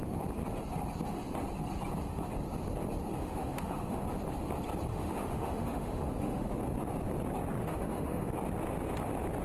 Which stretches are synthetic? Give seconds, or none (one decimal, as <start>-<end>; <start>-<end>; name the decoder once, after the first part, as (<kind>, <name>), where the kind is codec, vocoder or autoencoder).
3.2-4.0 (autoencoder, DAC-VAE); 4.9-6.6; 7.6-8.3

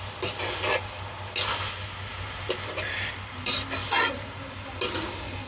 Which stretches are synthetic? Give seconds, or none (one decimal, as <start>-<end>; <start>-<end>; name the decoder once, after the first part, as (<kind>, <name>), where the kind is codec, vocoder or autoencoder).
none

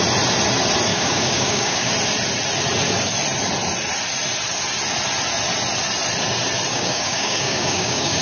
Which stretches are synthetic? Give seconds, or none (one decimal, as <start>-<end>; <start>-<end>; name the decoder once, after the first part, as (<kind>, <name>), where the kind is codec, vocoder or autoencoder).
0.9-1.9 (codec, DAC); 6.7-8.2

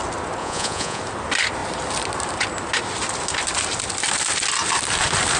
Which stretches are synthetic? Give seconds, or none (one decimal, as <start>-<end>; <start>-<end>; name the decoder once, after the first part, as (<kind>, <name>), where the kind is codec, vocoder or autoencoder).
0.4-1.0 (vocoder, Vocos)

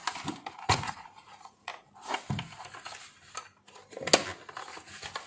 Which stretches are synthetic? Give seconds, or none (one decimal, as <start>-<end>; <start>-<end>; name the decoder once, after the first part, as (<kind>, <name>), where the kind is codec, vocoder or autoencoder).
0.5-1.7 (vocoder, Vocos)